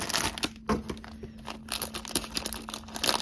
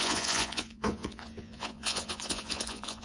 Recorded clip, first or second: first